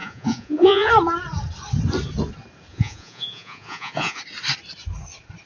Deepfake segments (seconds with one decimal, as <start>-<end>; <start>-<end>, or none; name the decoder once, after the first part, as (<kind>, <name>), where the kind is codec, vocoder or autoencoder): 0.0-0.9 (vocoder, Vocos); 2.7-4.2